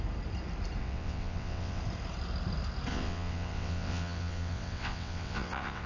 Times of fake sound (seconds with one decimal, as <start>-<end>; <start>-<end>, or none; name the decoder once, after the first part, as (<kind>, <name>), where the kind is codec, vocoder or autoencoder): 0.8-1.8 (vocoder, WaveNeXt); 2.9-5.9